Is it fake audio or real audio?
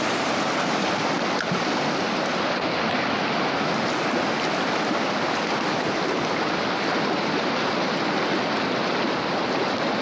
real